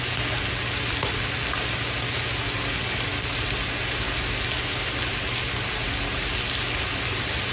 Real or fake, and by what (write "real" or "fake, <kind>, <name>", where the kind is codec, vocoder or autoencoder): real